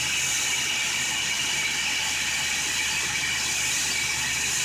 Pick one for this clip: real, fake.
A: fake